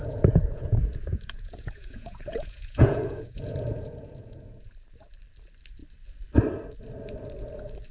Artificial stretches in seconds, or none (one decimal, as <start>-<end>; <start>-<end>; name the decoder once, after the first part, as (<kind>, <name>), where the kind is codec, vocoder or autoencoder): 0.0-4.7 (vocoder, Vocos)